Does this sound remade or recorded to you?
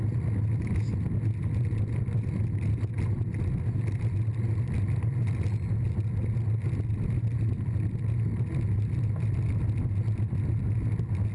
recorded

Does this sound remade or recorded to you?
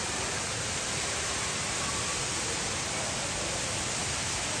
recorded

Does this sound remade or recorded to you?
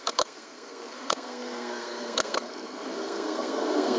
remade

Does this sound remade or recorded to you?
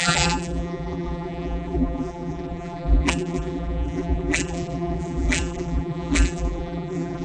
remade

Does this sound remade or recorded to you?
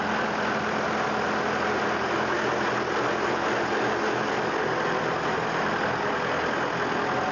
recorded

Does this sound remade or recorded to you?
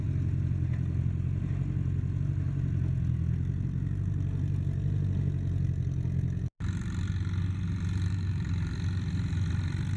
recorded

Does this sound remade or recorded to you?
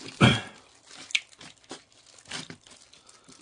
recorded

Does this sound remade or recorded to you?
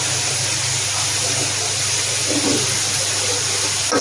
recorded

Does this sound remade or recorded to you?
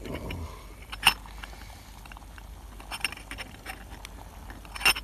recorded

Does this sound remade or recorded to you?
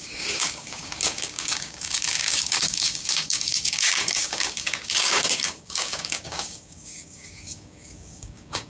remade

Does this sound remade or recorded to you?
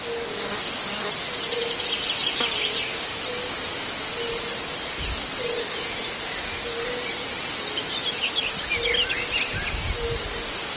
recorded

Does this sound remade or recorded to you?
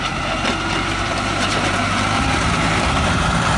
remade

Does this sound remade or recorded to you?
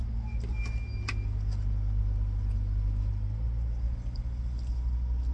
recorded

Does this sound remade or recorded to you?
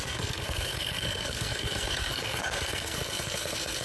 remade